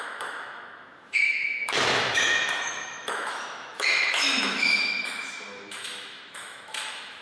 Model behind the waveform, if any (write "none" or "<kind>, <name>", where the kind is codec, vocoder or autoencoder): autoencoder, DAC-VAE